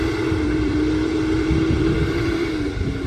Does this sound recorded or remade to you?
remade